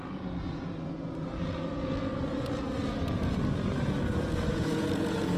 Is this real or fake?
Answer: fake